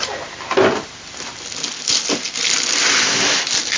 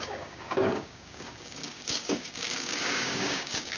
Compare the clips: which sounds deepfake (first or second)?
second